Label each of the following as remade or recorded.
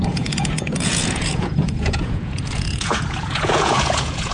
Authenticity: remade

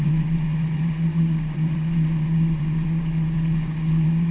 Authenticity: remade